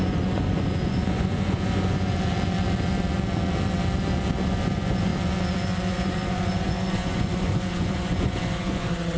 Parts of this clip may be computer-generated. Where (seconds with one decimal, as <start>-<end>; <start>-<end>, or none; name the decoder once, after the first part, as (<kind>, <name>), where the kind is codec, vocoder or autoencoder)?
0.0-2.1 (vocoder, Vocos); 4.5-5.1; 5.9-9.2